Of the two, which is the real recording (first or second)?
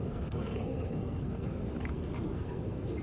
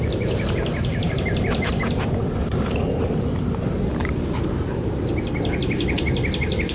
second